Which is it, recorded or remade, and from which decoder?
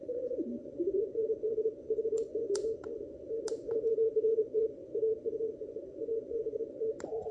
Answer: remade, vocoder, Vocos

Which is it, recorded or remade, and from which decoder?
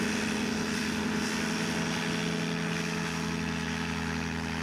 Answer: recorded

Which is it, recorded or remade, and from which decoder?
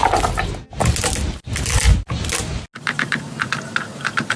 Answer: recorded